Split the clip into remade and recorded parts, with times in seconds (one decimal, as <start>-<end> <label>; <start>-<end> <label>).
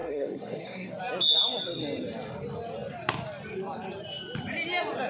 0.0-0.9 remade; 0.9-5.1 recorded